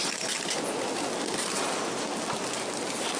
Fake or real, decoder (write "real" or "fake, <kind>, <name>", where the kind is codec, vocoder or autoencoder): real